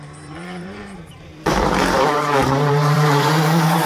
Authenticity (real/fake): fake